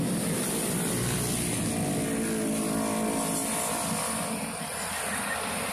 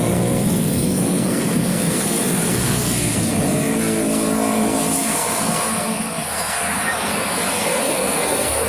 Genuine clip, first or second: first